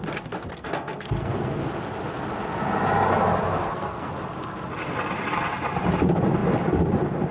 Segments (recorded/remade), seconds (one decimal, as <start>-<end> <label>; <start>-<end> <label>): 0.0-0.5 recorded; 0.5-1.6 remade; 1.6-3.5 recorded; 3.5-4.1 remade; 4.1-7.3 recorded